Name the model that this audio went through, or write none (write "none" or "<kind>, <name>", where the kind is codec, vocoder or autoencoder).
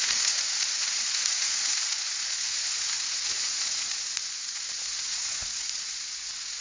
vocoder, Vocos